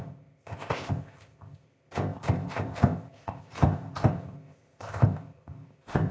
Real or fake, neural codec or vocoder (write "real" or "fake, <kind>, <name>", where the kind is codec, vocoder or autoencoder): fake, codec, ZipCodec